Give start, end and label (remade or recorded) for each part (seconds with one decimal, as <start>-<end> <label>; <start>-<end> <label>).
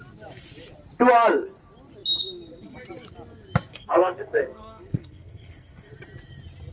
0.0-3.7 recorded; 3.7-5.9 remade; 5.9-6.7 recorded